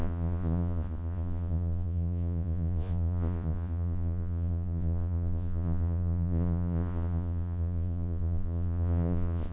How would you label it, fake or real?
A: fake